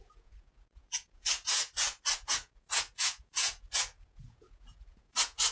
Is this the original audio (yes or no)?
no